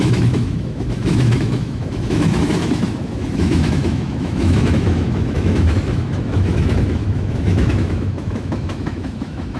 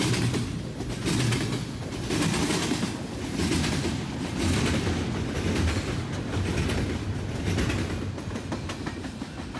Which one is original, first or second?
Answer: second